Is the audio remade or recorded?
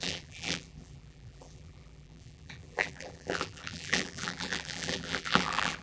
remade